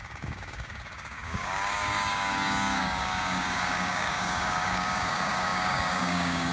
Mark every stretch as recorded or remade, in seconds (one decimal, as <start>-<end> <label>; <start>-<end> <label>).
0.0-6.5 remade